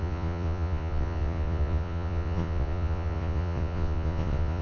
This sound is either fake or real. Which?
fake